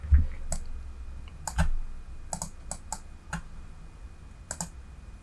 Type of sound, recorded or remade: recorded